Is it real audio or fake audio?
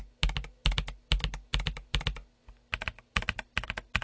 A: real